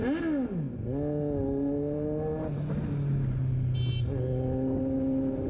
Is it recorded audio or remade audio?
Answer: recorded